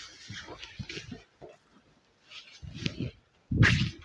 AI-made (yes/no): no